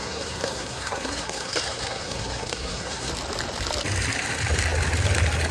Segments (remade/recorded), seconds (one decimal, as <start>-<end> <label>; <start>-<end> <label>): 0.0-3.1 remade; 3.1-5.5 recorded